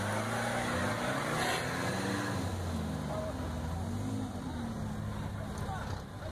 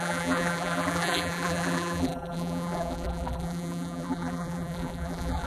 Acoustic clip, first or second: first